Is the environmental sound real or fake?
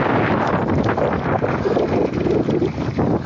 real